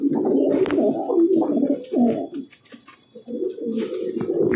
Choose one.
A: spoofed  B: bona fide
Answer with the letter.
B